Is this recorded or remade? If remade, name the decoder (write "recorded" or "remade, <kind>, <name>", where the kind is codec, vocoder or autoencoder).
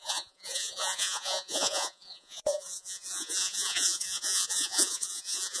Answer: remade, vocoder, Vocos